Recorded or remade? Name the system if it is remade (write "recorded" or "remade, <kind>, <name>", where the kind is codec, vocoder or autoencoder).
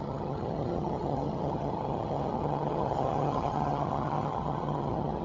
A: remade, vocoder, HiFi-GAN